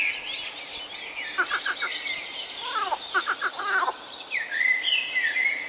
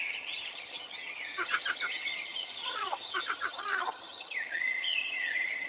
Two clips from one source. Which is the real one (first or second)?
first